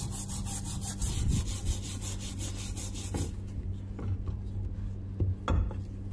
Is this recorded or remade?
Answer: recorded